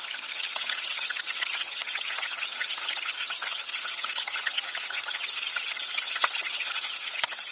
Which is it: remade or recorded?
remade